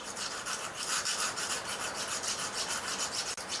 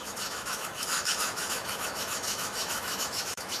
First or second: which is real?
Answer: first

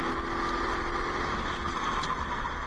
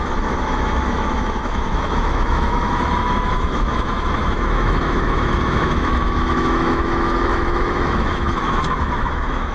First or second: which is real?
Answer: first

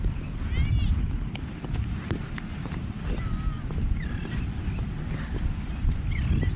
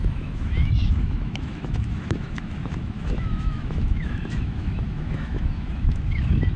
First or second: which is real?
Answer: first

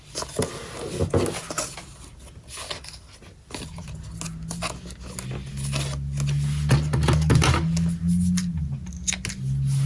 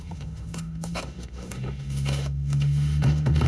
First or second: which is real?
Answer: first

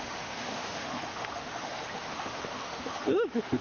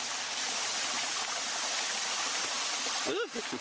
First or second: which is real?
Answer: second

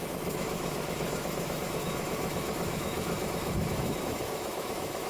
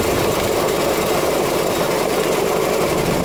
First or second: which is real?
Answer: second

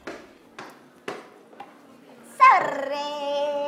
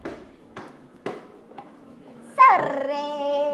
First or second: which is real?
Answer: first